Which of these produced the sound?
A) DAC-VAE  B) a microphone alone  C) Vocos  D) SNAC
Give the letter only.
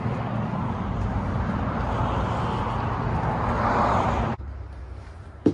B